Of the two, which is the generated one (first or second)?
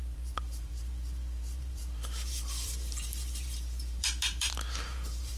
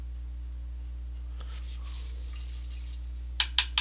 first